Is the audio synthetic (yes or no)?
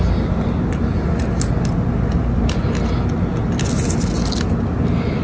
no